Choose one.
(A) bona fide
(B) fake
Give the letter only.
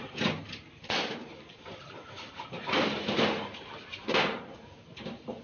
B